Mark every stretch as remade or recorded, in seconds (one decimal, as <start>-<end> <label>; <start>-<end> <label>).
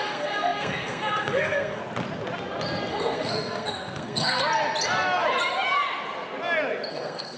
0.0-1.8 remade; 1.8-2.9 recorded; 2.9-4.4 remade; 4.4-6.9 recorded; 6.9-7.4 remade